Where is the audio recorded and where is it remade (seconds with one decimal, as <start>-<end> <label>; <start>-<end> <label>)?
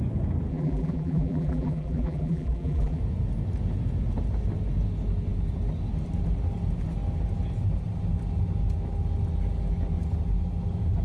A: 0.0-0.5 recorded; 0.5-3.0 remade; 3.0-11.0 recorded